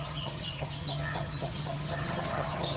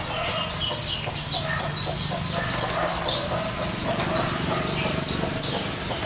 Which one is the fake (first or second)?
first